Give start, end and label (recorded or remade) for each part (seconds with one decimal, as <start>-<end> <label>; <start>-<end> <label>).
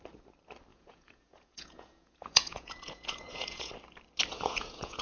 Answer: 0.0-0.7 recorded; 0.7-3.7 remade; 3.7-4.3 recorded; 4.3-5.0 remade